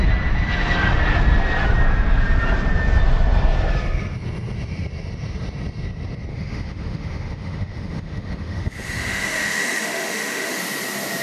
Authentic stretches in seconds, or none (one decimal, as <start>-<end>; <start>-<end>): 0.0-6.3; 10.6-11.2